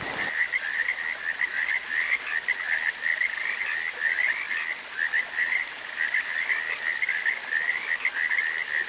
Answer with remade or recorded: recorded